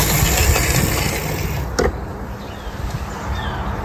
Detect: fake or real real